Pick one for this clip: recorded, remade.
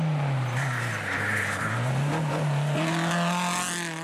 recorded